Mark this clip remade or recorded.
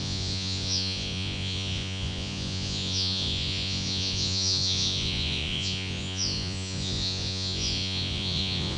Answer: remade